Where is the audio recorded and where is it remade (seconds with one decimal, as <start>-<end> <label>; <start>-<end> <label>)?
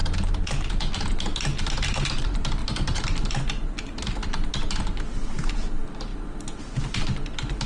0.0-2.6 recorded; 2.6-3.7 remade; 3.7-7.7 recorded